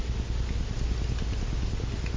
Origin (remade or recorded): recorded